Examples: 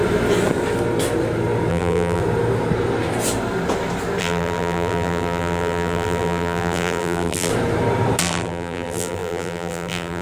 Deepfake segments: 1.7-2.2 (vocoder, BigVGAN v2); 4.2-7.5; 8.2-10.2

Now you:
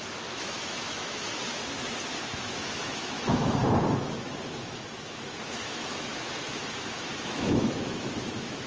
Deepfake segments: 0.0-1.6 (autoencoder, DAC-VAE); 2.2-8.7

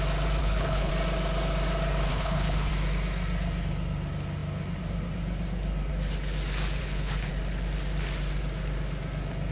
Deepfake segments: 0.4-0.9 (codec, HILCodec); 2.1-2.7; 6.8-7.3

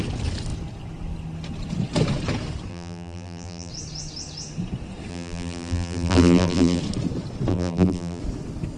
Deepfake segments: 2.7-3.7 (vocoder, BigVGAN v2); 5.1-6.8; 7.5-8.2

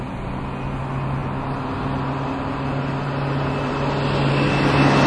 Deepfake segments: none